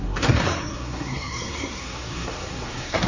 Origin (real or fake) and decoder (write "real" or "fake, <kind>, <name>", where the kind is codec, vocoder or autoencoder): fake, codec, SNAC